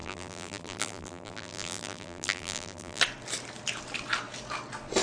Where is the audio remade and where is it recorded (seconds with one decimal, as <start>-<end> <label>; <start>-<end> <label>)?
0.0-3.0 remade; 3.0-5.0 recorded